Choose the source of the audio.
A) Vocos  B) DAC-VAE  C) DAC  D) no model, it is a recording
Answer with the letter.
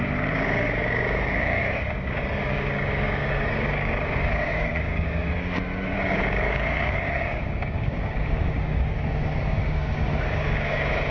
C